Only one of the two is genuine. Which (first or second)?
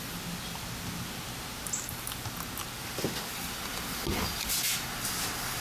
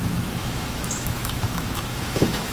first